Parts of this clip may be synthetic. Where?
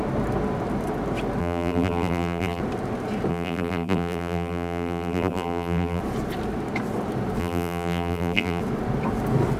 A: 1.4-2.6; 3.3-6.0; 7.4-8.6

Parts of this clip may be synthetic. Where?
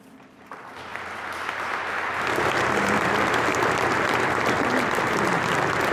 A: 0.0-5.9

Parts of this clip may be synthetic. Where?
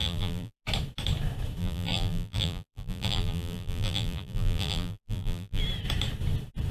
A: 0.0-0.6; 1.6-5.6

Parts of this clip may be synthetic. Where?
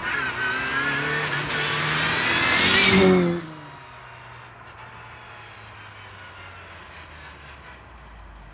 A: none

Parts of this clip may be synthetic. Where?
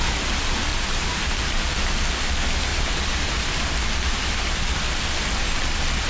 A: 0.7-1.4; 2.7-3.6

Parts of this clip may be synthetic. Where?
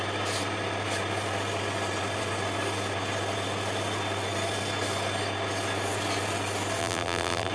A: 6.8-7.5